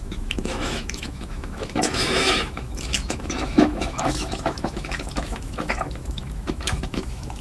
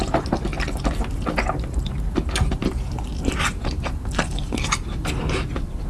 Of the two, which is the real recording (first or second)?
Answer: second